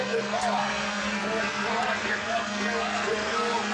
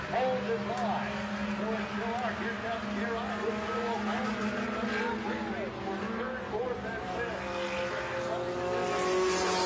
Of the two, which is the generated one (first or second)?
first